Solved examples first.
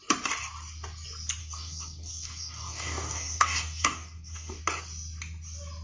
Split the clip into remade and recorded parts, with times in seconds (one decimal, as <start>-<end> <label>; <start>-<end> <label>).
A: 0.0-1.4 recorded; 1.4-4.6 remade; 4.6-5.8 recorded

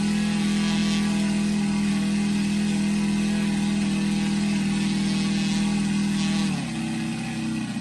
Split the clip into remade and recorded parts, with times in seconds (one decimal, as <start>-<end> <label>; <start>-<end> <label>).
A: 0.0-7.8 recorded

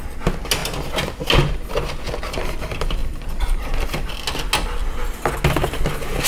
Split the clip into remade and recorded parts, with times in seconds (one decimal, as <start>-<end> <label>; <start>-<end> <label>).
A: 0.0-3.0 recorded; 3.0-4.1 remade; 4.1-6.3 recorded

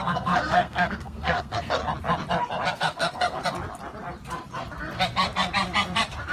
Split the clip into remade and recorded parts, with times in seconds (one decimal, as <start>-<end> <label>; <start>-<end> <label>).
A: 0.0-1.8 remade; 1.8-2.7 recorded; 2.7-3.4 remade; 3.4-6.3 recorded

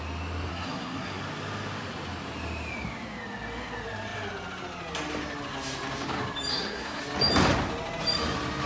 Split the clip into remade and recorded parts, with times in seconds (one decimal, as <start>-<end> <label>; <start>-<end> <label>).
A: 0.0-0.5 recorded; 0.5-1.2 remade; 1.2-6.5 recorded; 6.5-7.0 remade; 7.0-8.7 recorded

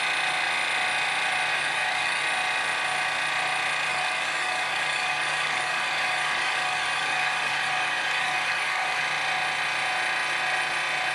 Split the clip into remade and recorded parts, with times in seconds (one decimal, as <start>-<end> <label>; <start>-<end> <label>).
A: 0.0-1.5 recorded; 1.5-2.2 remade; 2.2-3.9 recorded; 3.9-9.0 remade; 9.0-11.1 recorded